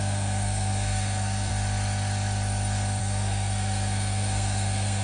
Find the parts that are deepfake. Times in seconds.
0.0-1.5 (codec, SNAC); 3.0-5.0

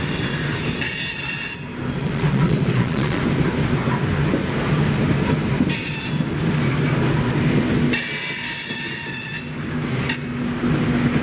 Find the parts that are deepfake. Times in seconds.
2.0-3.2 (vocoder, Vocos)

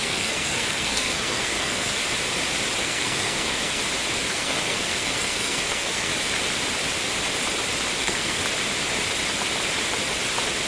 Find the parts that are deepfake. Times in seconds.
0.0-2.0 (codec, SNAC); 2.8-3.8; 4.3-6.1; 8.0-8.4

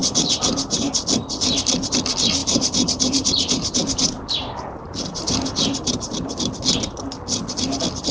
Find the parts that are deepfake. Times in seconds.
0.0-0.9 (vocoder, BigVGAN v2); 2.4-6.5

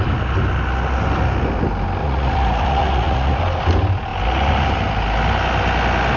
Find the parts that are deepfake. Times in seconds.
2.0-3.4 (vocoder, Vocos)